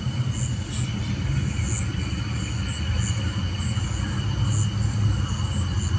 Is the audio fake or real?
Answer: real